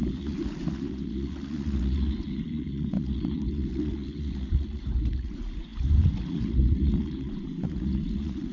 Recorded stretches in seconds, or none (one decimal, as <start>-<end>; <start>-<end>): none